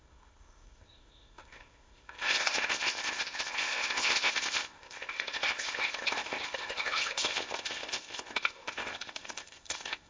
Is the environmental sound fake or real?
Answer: fake